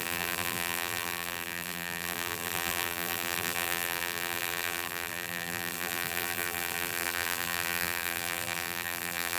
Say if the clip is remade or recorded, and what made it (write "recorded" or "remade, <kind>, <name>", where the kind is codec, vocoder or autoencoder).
remade, vocoder, BigVGAN v2